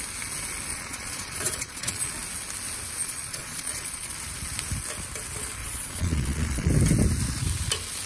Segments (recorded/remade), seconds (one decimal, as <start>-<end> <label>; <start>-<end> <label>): 0.0-0.7 recorded; 0.7-2.1 remade; 2.1-3.0 recorded; 3.0-4.1 remade; 4.1-5.6 recorded; 5.6-6.7 remade; 6.7-8.1 recorded